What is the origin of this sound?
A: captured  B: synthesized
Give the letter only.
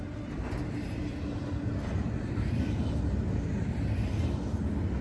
A